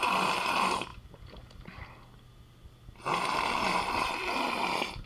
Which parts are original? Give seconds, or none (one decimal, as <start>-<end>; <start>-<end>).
0.0-5.1